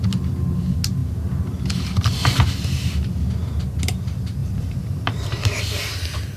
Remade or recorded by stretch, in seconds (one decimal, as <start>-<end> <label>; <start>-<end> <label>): 0.0-4.4 recorded; 4.4-5.6 remade; 5.6-6.4 recorded